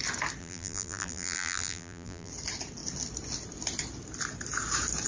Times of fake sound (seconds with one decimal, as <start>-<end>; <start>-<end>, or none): 0.4-2.3